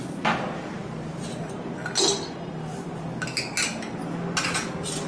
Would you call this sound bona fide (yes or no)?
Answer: yes